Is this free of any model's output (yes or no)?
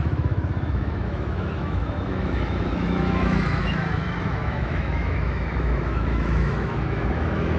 no